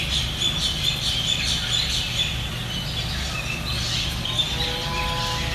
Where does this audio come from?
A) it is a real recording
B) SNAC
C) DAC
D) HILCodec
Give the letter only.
A